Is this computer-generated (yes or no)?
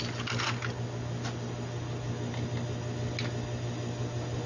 no